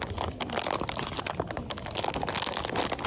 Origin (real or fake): real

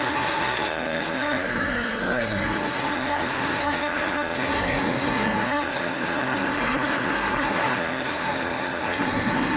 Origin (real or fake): fake